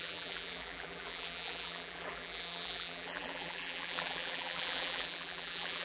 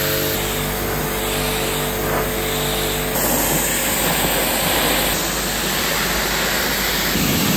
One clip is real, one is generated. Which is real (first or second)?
second